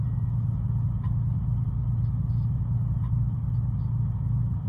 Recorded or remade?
recorded